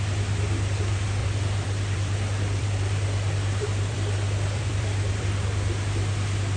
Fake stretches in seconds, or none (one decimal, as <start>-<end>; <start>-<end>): 1.2-5.2